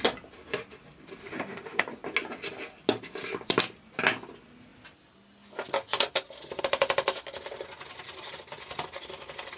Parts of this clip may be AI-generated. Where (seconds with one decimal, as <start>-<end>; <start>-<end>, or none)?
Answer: 1.2-1.8